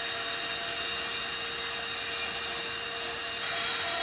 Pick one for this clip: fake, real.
real